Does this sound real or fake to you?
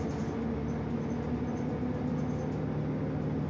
real